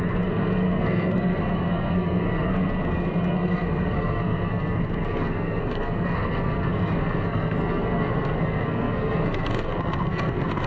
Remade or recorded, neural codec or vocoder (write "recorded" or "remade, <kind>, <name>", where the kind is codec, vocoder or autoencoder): remade, codec, SNAC